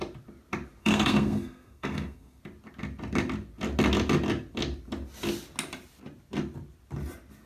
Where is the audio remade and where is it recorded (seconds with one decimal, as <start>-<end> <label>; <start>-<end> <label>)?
0.0-0.8 recorded; 0.8-2.4 remade; 2.4-7.5 recorded